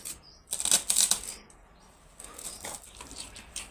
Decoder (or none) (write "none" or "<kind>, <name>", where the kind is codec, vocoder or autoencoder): none